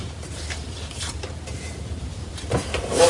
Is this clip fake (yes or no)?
yes